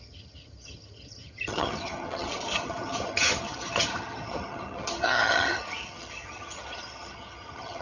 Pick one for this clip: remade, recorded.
remade